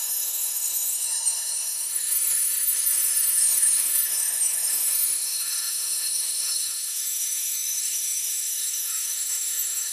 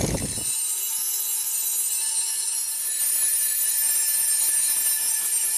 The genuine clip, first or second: second